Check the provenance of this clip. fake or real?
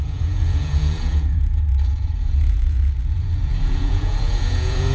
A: fake